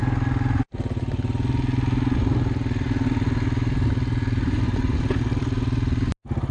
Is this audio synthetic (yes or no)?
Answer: no